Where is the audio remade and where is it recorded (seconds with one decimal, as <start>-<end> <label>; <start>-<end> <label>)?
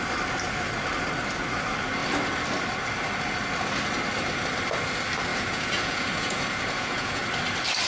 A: 0.0-5.3 recorded; 5.3-7.2 remade; 7.2-7.9 recorded